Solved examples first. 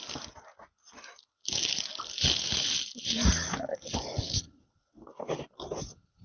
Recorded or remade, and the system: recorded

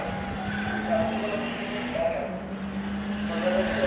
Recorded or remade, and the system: recorded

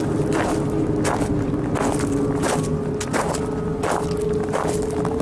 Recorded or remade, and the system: recorded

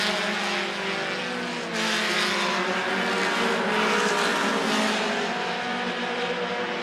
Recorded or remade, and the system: recorded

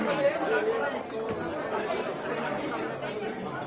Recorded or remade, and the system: recorded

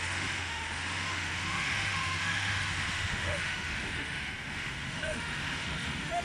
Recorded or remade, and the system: remade, autoencoder, DAC-VAE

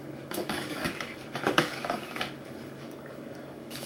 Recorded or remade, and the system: remade, codec, DAC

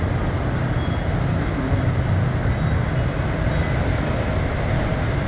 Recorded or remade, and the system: recorded